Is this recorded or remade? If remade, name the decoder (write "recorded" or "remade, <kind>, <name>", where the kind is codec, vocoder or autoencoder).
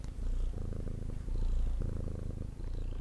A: recorded